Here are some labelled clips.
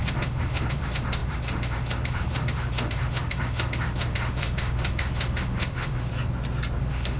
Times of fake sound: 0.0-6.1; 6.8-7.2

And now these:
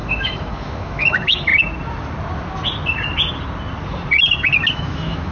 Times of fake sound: 0.0-1.5; 4.7-5.3

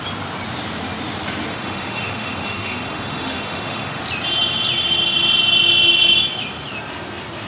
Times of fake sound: 1.5-4.0

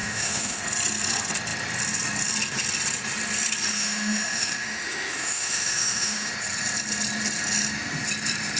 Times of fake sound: 0.0-0.6; 3.7-6.3

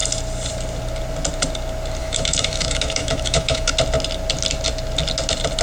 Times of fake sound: 2.0-3.7

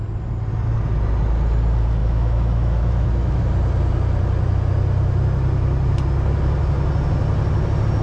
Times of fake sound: 2.0-3.4